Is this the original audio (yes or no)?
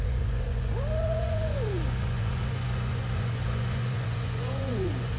no